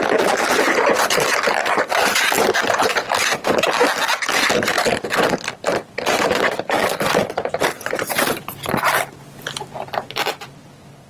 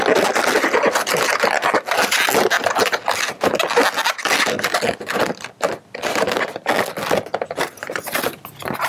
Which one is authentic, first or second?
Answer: second